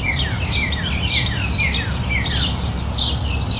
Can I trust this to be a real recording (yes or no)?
yes